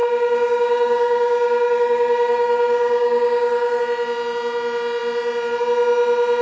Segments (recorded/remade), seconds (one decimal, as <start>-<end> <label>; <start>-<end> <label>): 0.0-3.8 remade; 3.8-6.4 recorded